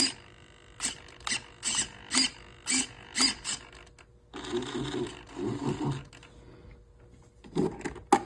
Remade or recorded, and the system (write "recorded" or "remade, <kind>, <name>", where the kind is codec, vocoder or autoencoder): recorded